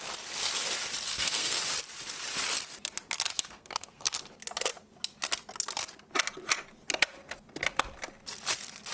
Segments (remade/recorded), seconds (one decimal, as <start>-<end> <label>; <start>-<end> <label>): 0.0-1.1 recorded; 1.1-1.6 remade; 1.6-3.3 recorded; 3.3-4.2 remade; 4.2-8.9 recorded